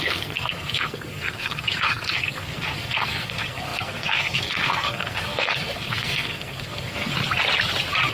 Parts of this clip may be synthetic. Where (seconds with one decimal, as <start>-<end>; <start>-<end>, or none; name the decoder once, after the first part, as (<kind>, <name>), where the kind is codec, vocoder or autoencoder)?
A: 0.0-7.1 (codec, SNAC)